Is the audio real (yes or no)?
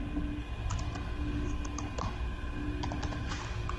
yes